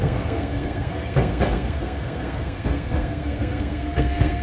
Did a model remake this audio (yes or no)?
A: yes